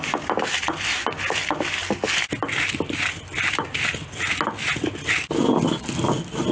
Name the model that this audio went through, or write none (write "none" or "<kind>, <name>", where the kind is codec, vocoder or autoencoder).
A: none